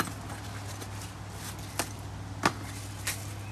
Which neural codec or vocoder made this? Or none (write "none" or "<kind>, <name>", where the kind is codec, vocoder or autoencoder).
none